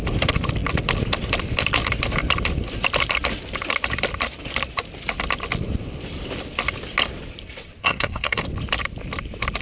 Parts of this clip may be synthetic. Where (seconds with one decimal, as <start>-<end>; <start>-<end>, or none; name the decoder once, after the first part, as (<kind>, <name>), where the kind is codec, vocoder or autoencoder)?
7.8-8.4 (codec, SNAC)

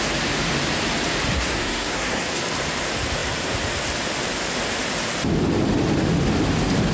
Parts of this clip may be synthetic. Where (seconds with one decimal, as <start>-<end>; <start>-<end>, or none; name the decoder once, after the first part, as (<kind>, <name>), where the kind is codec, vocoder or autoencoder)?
1.3-2.4 (codec, SNAC)

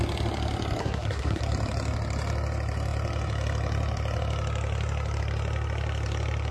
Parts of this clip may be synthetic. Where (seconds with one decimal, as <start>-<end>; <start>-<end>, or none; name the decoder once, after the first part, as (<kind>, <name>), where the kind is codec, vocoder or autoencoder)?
0.8-1.4 (codec, SNAC)

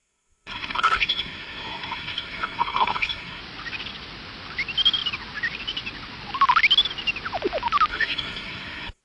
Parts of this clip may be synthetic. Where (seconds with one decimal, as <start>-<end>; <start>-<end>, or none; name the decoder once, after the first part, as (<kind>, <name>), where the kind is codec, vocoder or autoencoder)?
0.0-3.4 (codec, SNAC); 7.9-9.0

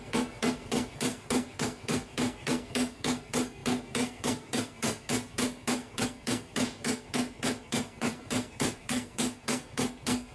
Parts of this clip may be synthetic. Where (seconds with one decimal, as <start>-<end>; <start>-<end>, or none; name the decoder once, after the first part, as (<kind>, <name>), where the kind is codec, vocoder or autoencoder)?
0.0-10.3 (codec, SNAC)